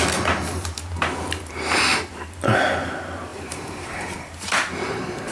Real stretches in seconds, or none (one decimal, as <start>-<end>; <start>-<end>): 0.0-3.3